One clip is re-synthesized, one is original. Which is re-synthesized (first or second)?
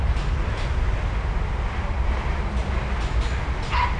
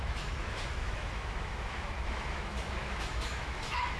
second